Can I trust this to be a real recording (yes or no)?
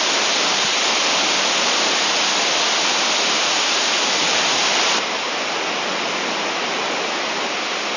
yes